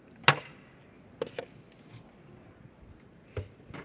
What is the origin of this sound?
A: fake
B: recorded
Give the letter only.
B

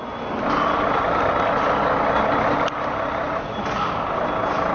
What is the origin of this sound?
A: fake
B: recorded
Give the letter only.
B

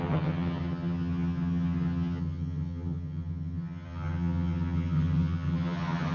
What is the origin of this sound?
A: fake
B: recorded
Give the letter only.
A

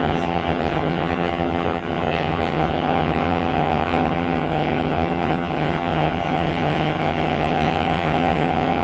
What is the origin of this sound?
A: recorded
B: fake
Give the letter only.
B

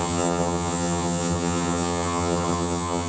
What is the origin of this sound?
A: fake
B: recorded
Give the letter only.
A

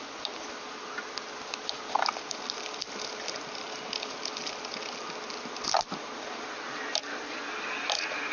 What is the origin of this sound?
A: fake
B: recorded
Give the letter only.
B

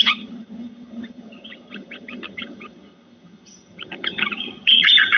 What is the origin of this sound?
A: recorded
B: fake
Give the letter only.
B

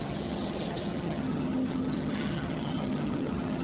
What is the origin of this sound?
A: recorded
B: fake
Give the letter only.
B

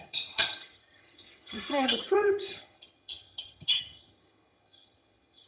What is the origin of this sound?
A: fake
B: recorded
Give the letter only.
A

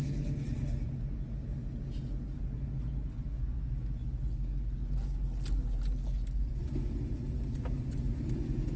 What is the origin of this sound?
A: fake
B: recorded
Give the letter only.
B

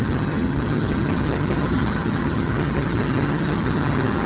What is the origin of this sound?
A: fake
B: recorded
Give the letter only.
A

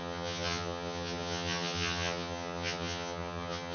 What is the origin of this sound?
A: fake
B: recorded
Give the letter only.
A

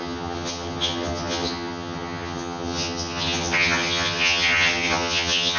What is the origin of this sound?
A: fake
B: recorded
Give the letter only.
A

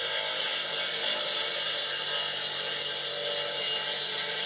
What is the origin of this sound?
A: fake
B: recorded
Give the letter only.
B